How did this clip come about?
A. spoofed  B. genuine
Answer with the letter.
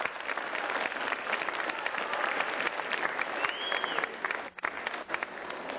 B